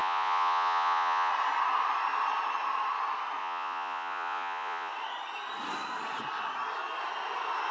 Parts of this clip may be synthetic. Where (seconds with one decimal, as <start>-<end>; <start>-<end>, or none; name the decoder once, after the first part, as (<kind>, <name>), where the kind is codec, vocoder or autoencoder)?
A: 0.0-1.3 (vocoder, Vocos); 3.4-4.9

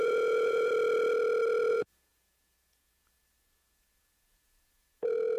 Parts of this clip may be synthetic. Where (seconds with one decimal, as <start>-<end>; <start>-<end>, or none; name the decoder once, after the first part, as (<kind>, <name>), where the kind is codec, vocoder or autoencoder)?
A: 0.0-0.7 (vocoder, Vocos); 1.7-5.4